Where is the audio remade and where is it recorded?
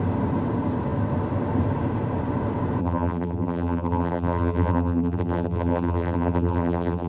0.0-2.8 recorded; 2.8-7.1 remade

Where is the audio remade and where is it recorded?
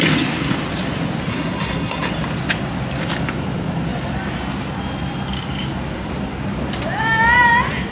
0.0-1.3 recorded; 1.3-2.1 remade; 2.1-7.9 recorded